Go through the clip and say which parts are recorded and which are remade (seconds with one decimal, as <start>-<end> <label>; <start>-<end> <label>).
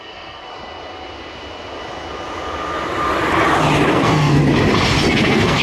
0.0-0.5 remade; 0.5-3.9 recorded; 3.9-4.4 remade; 4.4-5.1 recorded; 5.1-5.6 remade